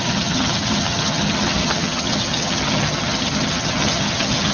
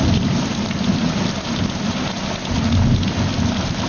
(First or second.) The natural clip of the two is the second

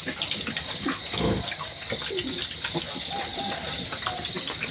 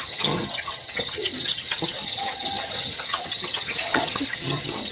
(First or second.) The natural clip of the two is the first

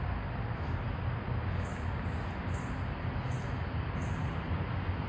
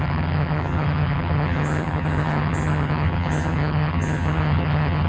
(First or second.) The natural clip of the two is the first